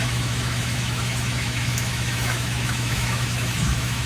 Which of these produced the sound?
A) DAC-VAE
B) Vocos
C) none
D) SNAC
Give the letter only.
A